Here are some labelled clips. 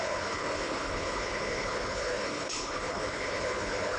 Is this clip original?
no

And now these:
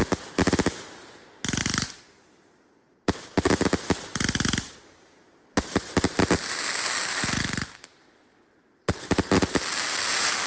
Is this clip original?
yes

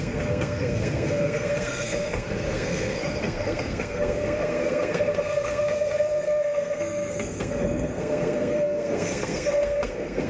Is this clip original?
no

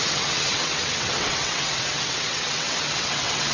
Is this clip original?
no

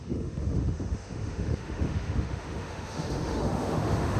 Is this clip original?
no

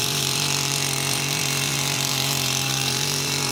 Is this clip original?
no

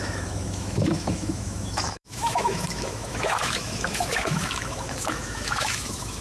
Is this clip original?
no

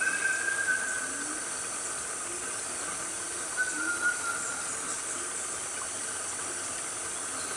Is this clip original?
yes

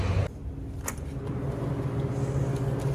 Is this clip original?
yes